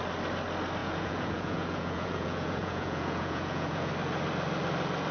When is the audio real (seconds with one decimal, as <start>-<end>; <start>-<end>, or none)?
0.0-0.8; 3.9-5.1